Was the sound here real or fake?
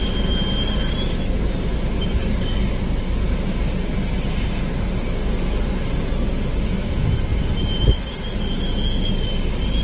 real